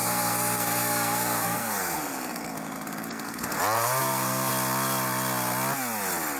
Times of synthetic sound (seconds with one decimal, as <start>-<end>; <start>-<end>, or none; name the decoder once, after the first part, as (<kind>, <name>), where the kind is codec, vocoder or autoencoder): 0.0-3.6 (codec, SNAC); 4.0-4.5